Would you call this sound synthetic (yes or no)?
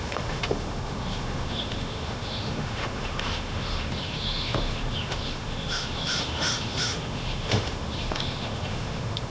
yes